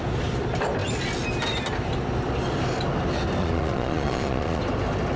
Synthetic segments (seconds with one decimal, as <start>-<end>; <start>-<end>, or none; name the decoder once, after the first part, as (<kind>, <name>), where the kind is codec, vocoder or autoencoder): 3.4-4.6 (vocoder, Vocos)